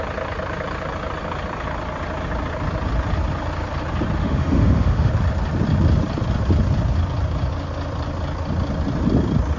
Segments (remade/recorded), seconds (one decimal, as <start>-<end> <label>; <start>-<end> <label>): 0.0-4.2 recorded; 4.2-5.1 remade; 5.1-9.6 recorded